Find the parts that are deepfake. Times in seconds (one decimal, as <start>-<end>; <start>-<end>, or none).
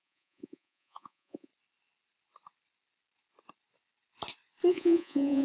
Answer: 0.0-1.5; 4.7-5.4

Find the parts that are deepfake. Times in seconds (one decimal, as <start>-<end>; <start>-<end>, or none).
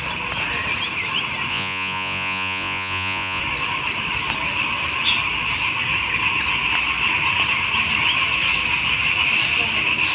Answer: 1.5-3.4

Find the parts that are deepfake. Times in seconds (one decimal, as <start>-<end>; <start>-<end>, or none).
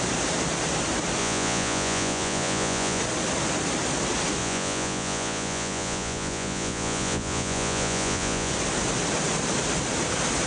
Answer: 1.2-3.0; 4.4-8.5